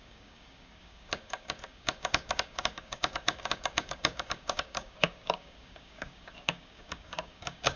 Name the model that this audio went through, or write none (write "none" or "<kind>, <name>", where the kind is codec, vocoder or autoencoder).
codec, DAC